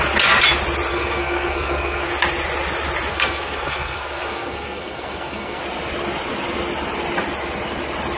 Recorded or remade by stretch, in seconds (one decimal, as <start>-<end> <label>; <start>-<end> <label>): 0.0-0.9 recorded; 0.9-2.1 remade; 2.1-3.1 recorded; 3.1-5.6 remade; 5.6-8.2 recorded